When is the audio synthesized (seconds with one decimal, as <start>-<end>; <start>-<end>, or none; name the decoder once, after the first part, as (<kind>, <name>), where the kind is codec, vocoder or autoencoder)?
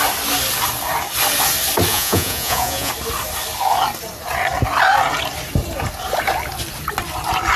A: 1.9-2.9 (vocoder, Vocos)